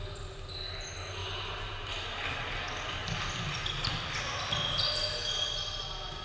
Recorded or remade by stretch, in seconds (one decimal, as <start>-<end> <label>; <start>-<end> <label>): 0.0-1.2 recorded; 1.2-1.9 remade; 1.9-6.2 recorded